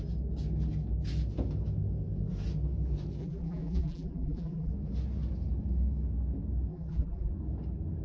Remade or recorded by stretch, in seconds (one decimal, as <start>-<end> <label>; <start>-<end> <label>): 0.0-3.2 recorded; 3.2-4.7 remade; 4.7-6.7 recorded; 6.7-7.3 remade; 7.3-8.0 recorded

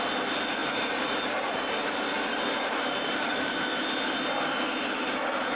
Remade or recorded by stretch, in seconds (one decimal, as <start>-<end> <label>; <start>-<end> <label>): 0.0-0.6 recorded; 0.6-3.5 remade; 3.5-5.6 recorded